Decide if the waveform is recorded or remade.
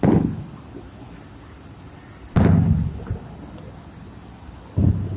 recorded